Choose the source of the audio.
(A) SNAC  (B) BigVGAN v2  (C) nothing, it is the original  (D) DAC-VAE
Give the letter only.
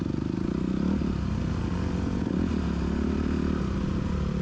C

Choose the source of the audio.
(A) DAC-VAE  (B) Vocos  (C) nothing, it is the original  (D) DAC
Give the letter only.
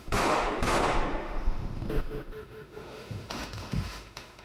A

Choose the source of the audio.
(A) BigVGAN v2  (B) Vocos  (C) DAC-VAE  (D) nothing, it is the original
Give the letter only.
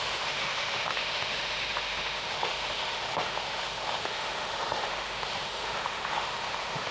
C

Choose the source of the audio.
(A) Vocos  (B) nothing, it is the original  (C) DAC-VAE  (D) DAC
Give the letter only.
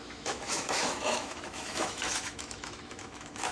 C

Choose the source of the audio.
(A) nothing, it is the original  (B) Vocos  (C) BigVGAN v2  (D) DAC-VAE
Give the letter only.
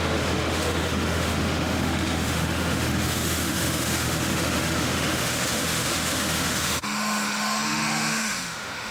D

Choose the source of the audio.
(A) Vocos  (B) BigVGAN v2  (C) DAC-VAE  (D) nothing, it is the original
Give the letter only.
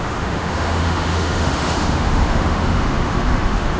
C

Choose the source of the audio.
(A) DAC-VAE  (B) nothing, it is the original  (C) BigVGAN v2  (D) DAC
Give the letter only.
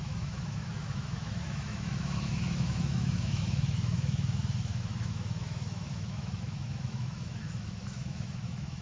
A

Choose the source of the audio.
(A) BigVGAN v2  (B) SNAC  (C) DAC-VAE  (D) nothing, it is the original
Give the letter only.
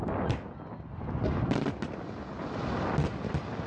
D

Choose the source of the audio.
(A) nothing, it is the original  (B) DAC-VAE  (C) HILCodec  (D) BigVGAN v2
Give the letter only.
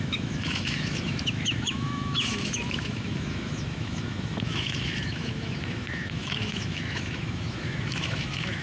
B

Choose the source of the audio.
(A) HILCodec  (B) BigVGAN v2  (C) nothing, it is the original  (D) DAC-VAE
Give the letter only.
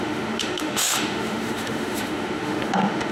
D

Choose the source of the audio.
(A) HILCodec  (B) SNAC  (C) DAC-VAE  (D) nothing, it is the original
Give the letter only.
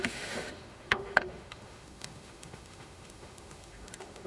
C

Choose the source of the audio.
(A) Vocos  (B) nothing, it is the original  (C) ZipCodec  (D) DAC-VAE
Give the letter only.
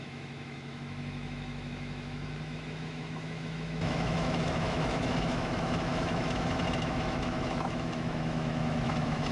D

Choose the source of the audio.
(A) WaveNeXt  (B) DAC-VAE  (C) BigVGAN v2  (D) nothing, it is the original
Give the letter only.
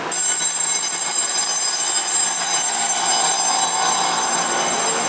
D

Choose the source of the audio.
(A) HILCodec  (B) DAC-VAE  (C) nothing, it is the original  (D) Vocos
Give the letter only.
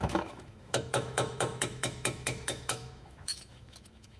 B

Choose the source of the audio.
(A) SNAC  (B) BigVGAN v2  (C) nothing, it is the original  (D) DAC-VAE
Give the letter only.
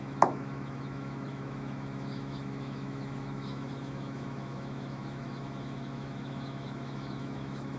D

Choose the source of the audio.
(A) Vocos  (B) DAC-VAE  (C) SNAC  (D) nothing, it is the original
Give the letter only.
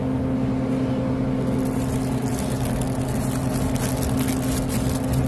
D